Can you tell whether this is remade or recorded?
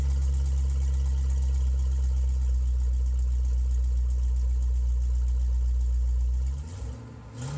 recorded